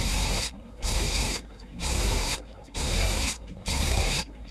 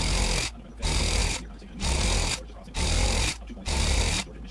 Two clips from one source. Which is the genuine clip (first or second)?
second